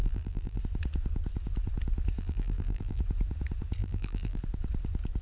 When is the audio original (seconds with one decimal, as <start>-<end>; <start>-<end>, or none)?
0.6-2.2; 3.0-3.8; 4.4-5.2